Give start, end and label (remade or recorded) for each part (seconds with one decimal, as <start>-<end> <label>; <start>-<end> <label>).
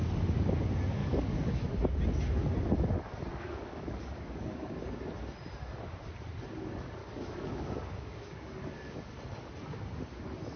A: 0.0-1.0 recorded; 1.0-1.8 remade; 1.8-3.3 recorded; 3.3-5.0 remade; 5.0-7.0 recorded; 7.0-9.1 remade; 9.1-10.6 recorded